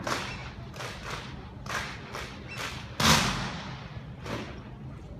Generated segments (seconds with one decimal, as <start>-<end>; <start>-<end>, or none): none